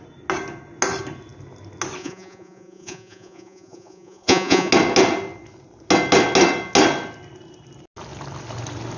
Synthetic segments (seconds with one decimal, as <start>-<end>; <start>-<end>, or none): 2.0-4.7